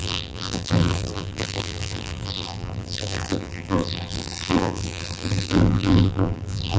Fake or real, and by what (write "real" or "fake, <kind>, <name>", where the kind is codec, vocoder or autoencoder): fake, vocoder, BigVGAN v2